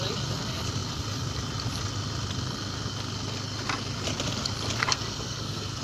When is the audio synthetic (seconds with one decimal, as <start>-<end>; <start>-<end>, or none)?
4.8-5.8